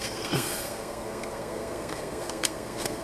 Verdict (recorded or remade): remade